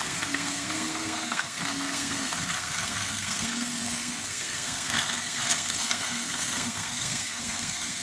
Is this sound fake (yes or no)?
yes